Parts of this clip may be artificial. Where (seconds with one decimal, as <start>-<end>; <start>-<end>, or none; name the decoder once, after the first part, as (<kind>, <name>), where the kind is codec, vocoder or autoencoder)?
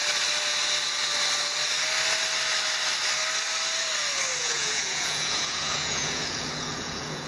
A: 4.4-7.3 (vocoder, Vocos)